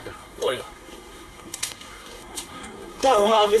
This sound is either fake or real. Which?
fake